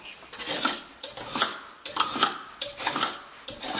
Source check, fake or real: real